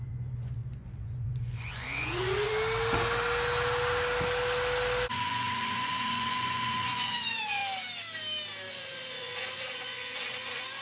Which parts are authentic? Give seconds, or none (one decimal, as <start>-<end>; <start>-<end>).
2.5-5.1; 7.6-8.7